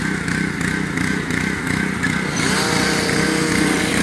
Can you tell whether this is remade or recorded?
recorded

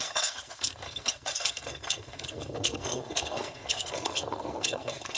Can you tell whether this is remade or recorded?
remade